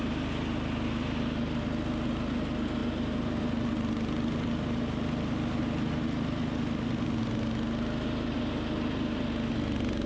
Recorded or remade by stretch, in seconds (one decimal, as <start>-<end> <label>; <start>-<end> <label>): 0.0-10.1 recorded